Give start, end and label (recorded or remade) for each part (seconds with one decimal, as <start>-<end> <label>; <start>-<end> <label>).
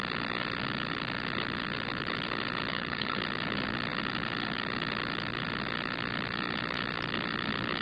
0.0-2.7 recorded; 2.7-3.2 remade; 3.2-7.8 recorded